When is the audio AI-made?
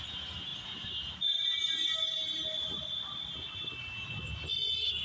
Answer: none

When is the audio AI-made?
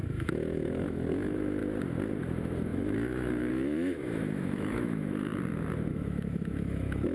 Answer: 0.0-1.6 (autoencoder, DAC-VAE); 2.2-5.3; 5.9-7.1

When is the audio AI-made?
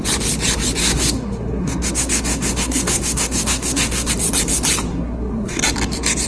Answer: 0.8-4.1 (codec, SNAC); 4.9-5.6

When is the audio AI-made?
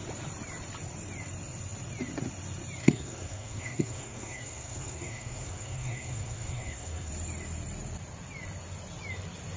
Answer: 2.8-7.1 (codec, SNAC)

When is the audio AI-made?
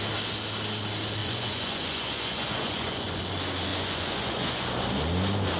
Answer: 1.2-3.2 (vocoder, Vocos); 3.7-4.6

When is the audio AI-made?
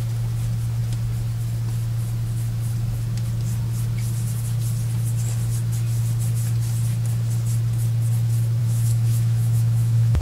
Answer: 8.6-10.2 (autoencoder, DAC-VAE)